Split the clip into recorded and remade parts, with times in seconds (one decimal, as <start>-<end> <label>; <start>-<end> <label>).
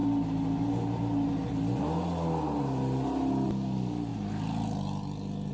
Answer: 0.0-5.5 recorded